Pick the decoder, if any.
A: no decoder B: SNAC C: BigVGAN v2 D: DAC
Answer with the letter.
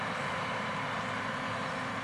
C